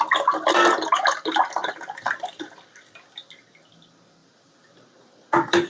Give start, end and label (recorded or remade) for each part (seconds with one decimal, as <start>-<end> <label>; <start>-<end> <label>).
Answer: 0.0-1.6 recorded; 1.6-3.7 remade; 3.7-4.2 recorded; 4.2-5.7 remade